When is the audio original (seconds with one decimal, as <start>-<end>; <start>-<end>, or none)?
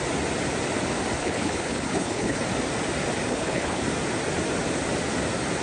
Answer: 0.0-1.2; 2.4-3.3; 3.8-5.6